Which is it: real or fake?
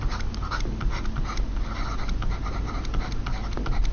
real